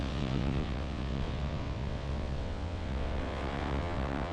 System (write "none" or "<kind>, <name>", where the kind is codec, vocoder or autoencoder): vocoder, WaveNeXt